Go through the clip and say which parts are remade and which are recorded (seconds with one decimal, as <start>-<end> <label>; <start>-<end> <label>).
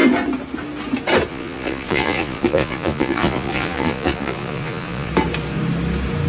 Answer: 0.0-1.3 recorded; 1.3-5.1 remade; 5.1-6.3 recorded